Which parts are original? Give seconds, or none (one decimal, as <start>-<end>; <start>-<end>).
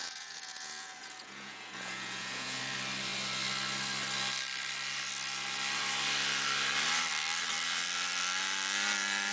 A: 2.6-9.3